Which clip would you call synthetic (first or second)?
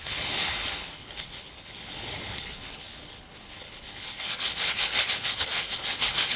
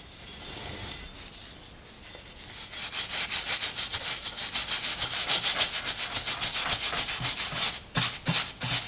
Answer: first